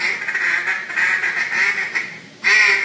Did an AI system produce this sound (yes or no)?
no